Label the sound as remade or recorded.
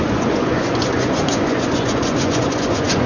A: remade